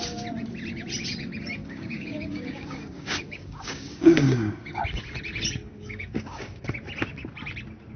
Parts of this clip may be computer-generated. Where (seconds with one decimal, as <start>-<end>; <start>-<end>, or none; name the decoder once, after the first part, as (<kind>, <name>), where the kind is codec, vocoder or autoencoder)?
1.6-4.8 (codec, DAC); 5.6-6.7